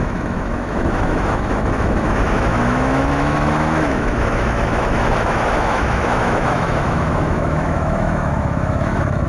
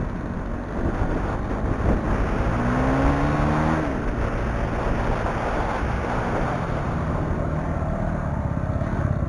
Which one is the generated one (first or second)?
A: first